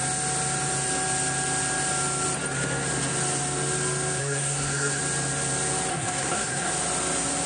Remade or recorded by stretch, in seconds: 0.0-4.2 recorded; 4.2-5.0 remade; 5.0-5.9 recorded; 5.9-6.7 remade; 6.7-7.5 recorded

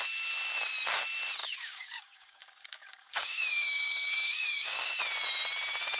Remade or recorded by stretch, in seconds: 0.0-1.4 recorded; 1.4-5.0 remade; 5.0-6.0 recorded

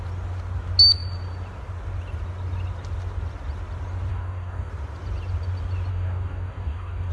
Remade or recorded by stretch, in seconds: 0.0-4.1 recorded; 4.1-4.7 remade; 4.7-5.9 recorded; 5.9-7.1 remade

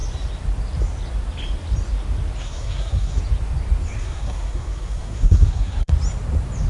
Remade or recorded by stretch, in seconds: 0.0-2.4 recorded; 2.4-3.2 remade; 3.2-4.0 recorded; 4.0-5.9 remade; 5.9-6.7 recorded

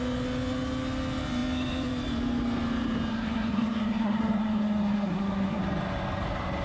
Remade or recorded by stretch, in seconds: 0.0-3.1 recorded; 3.1-5.6 remade; 5.6-6.6 recorded

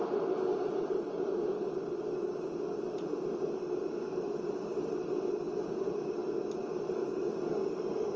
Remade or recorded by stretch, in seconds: 0.0-8.2 recorded

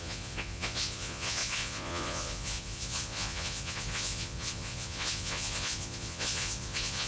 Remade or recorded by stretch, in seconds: 0.0-7.1 remade

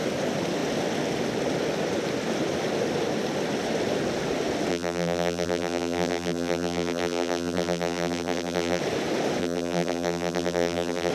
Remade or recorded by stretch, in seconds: 0.0-4.7 recorded; 4.7-8.8 remade; 8.8-9.4 recorded; 9.4-11.1 remade